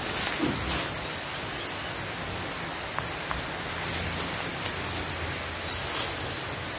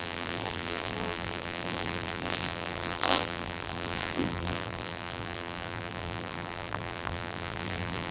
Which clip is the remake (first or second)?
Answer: second